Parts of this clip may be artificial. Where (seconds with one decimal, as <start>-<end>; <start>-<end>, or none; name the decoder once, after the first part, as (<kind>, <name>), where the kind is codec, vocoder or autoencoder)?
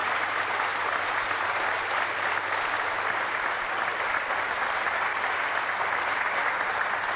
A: 0.0-4.3 (vocoder, BigVGAN v2); 5.1-7.2